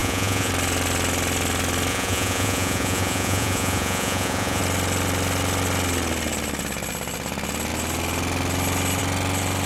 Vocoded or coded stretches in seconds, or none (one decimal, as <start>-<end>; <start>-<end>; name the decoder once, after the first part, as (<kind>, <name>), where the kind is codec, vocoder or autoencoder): 0.0-0.5 (vocoder, Vocos); 1.9-4.6